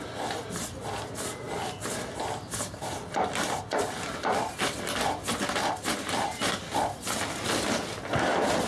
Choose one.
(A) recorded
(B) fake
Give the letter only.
A